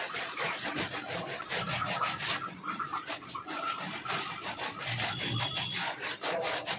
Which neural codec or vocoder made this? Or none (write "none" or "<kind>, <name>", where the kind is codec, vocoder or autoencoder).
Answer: none